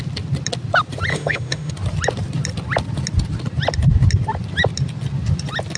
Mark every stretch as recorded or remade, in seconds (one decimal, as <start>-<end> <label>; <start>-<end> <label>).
0.0-1.1 recorded; 1.1-1.7 remade; 1.7-5.8 recorded